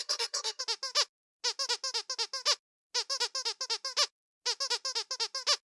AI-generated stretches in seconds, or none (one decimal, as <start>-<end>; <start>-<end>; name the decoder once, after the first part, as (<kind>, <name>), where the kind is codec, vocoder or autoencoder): 0.0-0.6 (codec, SNAC)